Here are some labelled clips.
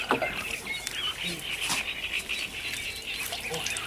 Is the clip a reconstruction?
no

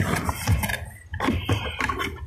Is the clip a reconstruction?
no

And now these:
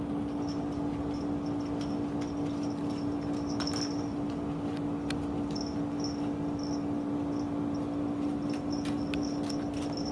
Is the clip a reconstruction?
no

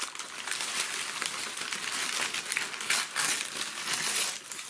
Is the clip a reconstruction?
no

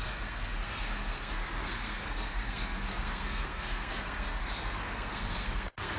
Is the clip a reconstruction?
yes